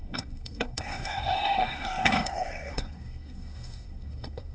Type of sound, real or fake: fake